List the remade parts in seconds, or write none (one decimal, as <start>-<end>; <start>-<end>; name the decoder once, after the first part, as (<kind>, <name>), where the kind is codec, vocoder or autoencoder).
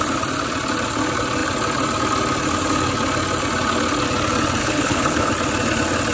4.6-5.3 (codec, HILCodec)